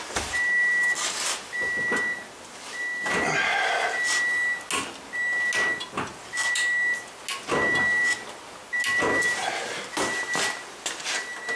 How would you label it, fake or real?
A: real